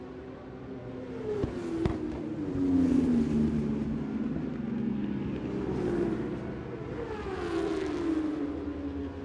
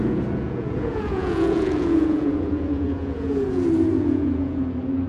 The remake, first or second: second